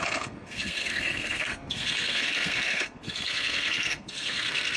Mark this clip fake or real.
fake